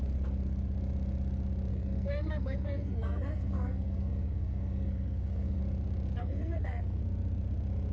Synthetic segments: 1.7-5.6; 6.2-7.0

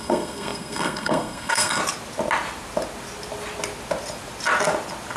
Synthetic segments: 0.0-1.8

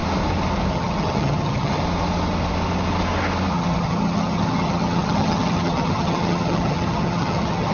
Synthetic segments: 0.7-1.8; 3.5-7.7

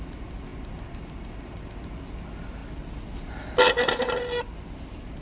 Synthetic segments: none